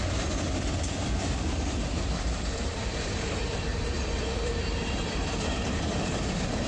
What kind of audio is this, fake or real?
fake